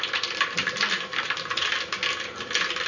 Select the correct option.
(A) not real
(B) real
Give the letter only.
B